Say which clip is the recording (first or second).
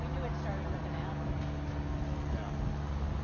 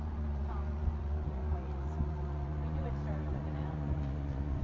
first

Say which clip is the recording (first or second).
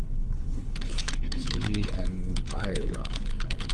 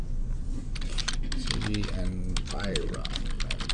second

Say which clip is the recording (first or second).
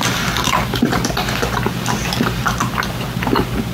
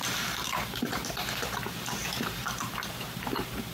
first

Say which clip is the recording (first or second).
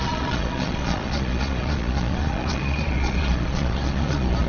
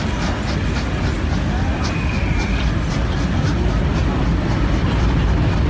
second